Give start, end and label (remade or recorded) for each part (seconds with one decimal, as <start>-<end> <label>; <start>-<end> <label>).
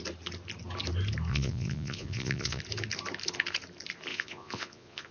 0.0-1.3 recorded; 1.3-2.6 remade; 2.6-4.1 recorded; 4.1-5.1 remade